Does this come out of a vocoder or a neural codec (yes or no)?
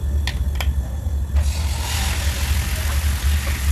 no